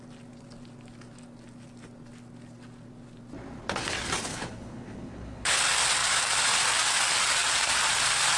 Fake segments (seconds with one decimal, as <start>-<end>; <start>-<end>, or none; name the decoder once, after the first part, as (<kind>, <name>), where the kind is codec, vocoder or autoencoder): 4.3-5.6 (codec, HILCodec)